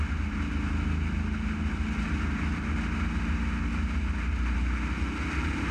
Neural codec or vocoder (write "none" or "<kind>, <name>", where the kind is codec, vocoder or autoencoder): none